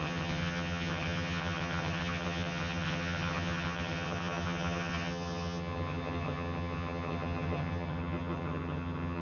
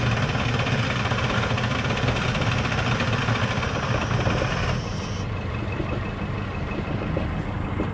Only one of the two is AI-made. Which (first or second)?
first